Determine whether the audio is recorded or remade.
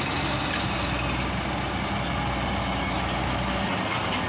recorded